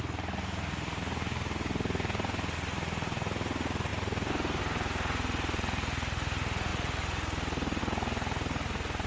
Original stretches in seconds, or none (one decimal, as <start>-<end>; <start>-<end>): 0.0-9.1